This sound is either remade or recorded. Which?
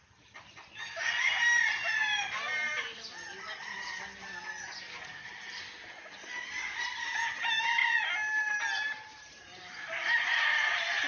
recorded